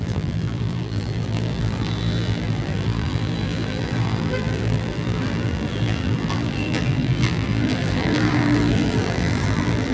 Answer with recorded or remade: remade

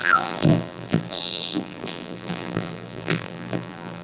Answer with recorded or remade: remade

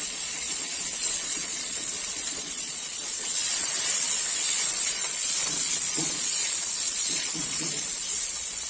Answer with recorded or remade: remade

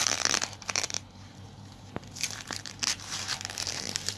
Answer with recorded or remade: remade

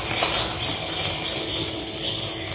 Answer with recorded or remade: recorded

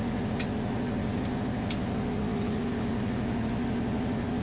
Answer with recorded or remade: recorded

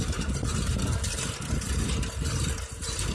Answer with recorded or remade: recorded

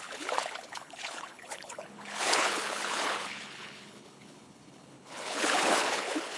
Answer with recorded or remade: remade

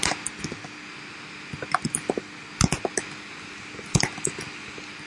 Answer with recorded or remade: recorded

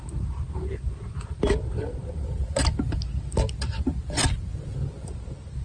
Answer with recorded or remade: recorded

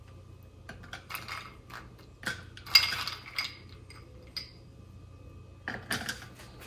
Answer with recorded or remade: recorded